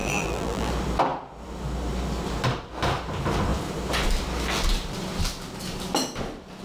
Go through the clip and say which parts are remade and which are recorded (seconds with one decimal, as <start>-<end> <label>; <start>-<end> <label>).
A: 0.0-0.7 remade; 0.7-6.6 recorded